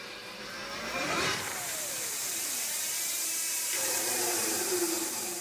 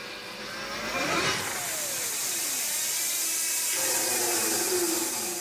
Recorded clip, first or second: second